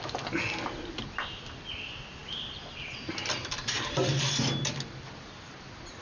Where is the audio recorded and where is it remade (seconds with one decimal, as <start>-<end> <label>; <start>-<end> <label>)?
0.0-6.0 recorded